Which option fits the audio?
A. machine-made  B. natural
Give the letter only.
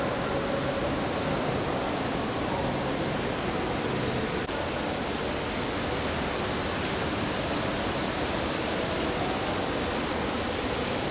B